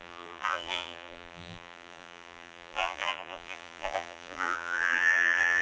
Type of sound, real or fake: fake